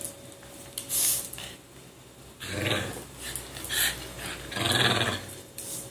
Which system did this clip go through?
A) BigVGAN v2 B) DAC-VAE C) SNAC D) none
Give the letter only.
D